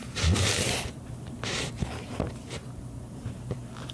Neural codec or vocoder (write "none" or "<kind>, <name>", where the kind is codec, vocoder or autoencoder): vocoder, BigVGAN v2